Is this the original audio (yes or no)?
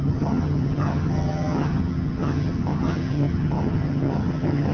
no